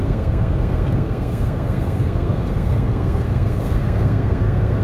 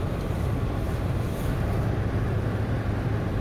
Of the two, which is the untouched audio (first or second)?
second